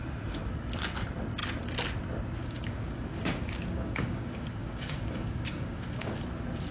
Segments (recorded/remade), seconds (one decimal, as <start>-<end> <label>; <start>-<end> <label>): 0.0-2.4 recorded; 2.4-6.3 remade; 6.3-6.7 recorded